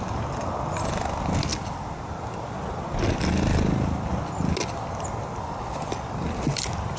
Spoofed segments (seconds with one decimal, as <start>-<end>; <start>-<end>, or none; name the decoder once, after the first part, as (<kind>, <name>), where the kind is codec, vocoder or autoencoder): none